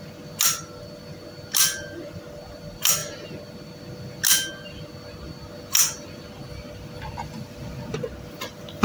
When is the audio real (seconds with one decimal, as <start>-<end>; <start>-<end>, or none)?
0.0-8.8